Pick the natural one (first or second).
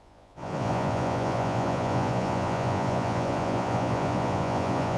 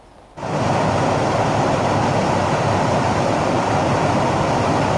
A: second